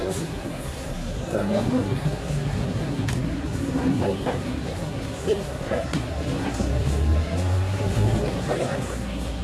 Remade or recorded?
remade